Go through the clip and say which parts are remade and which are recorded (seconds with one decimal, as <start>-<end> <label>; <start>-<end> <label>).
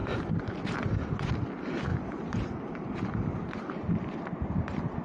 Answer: 0.0-1.3 remade; 1.3-1.9 recorded; 1.9-5.0 remade